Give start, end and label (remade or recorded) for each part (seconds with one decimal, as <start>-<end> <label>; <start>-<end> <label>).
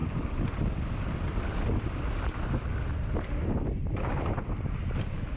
0.0-5.4 recorded